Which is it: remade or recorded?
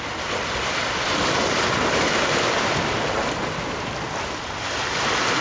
recorded